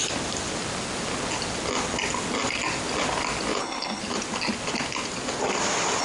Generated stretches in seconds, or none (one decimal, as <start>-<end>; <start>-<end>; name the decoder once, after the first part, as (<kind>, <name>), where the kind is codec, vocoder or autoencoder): 3.6-4.0 (codec, HILCodec)